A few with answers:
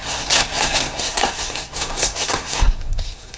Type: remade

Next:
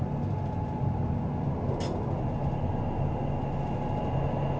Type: recorded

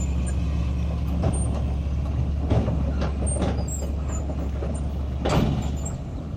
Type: recorded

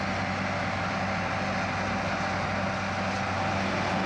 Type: recorded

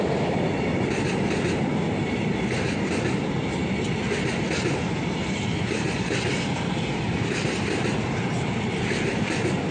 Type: recorded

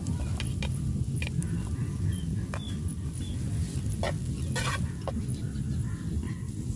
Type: recorded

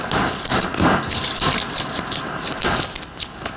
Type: recorded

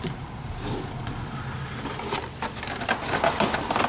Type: recorded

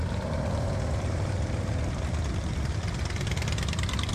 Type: remade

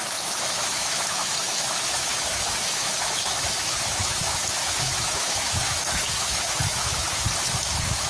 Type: remade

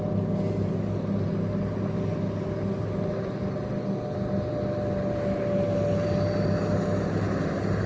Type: recorded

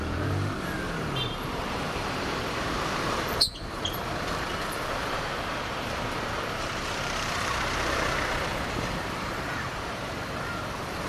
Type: remade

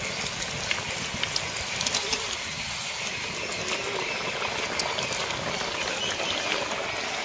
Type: recorded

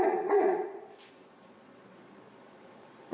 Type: remade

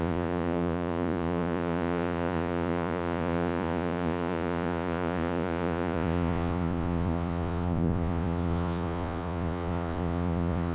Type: remade